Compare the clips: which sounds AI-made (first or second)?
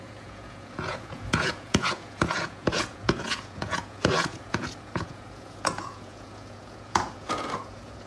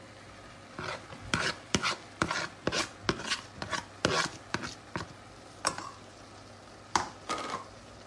first